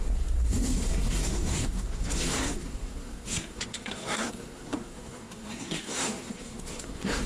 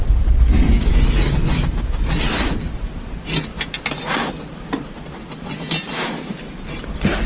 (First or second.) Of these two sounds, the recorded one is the second